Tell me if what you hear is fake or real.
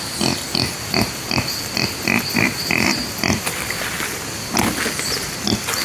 real